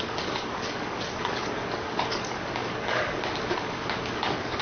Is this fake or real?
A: fake